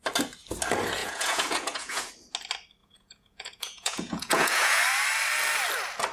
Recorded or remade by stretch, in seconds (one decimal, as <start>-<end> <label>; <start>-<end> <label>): 0.0-1.0 recorded; 1.0-2.1 remade; 2.1-2.8 recorded; 2.8-4.8 remade; 4.8-6.1 recorded